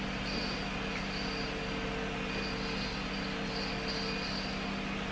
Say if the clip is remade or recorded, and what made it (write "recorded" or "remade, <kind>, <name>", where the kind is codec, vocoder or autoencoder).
recorded